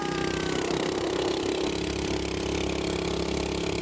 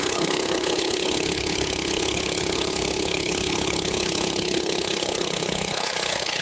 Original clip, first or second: first